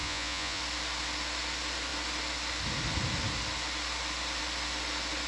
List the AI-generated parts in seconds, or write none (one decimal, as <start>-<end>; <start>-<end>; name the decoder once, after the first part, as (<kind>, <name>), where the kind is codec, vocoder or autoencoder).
0.0-0.6 (vocoder, Vocos)

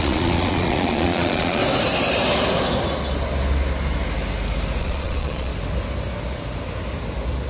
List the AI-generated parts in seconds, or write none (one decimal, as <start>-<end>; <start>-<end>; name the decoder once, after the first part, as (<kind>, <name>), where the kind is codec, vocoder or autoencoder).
0.0-1.6 (vocoder, Vocos); 4.8-5.5

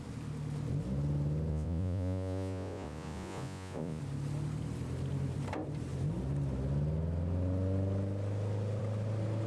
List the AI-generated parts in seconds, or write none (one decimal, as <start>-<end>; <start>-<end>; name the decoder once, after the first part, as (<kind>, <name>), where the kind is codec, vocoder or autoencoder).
1.5-4.0 (vocoder, Vocos)

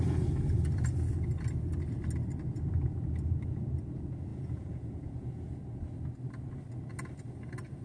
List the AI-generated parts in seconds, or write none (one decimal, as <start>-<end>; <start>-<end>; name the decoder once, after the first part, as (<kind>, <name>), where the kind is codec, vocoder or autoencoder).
4.3-5.6 (vocoder, Vocos)

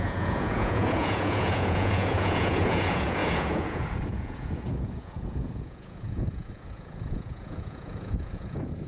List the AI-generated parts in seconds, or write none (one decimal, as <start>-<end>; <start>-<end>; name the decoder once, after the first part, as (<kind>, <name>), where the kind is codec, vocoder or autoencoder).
0.0-8.9 (vocoder, Vocos)

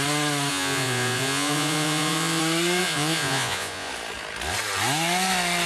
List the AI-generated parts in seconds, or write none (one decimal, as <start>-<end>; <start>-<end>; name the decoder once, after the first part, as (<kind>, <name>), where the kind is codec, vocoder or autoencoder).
0.5-2.4 (vocoder, Vocos); 2.8-3.9